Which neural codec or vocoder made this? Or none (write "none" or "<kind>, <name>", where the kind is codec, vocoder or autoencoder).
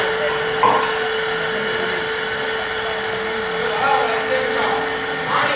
none